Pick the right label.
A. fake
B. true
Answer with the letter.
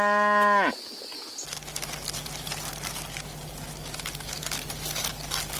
B